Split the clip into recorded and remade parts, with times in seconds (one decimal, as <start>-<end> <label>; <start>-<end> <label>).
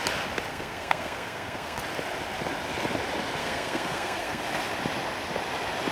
0.0-0.5 recorded; 0.5-1.8 remade; 1.8-3.4 recorded; 3.4-4.4 remade; 4.4-5.9 recorded